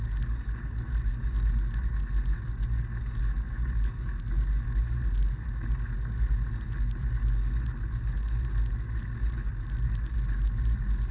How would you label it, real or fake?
real